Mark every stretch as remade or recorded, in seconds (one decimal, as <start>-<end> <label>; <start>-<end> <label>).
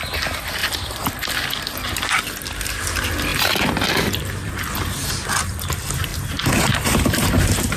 0.0-0.6 recorded; 0.6-1.3 remade; 1.3-6.1 recorded; 6.1-7.8 remade